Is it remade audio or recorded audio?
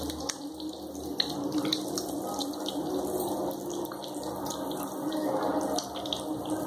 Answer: recorded